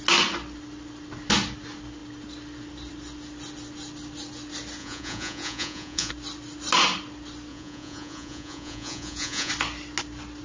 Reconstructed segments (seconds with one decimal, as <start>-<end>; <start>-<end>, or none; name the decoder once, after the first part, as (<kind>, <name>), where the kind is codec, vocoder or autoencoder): 4.8-6.1 (vocoder, Vocos); 7.5-9.5